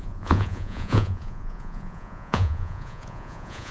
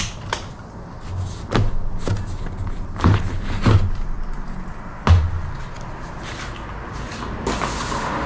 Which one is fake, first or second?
first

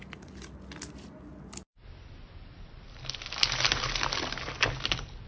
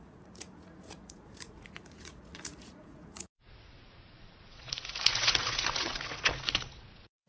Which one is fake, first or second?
second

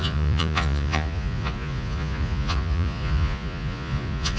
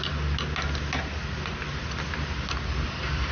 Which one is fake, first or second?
first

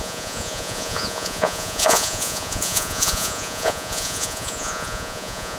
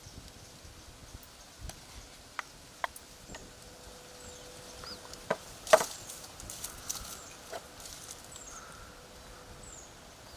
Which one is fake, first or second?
first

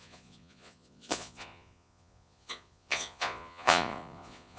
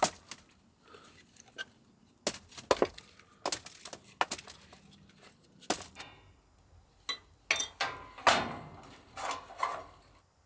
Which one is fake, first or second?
first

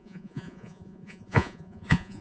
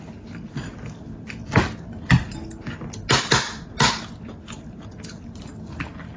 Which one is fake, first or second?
first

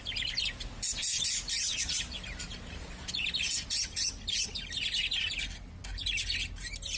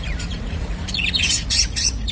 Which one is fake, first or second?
second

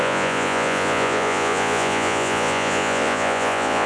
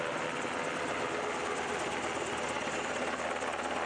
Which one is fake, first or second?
first